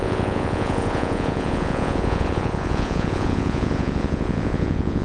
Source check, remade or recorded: remade